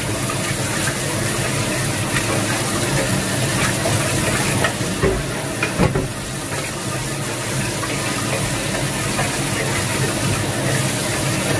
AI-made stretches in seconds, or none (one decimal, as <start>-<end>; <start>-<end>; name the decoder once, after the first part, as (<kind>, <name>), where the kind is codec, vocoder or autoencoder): none